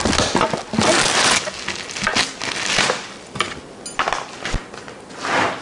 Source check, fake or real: real